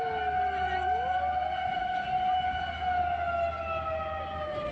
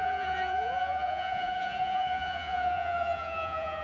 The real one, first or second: first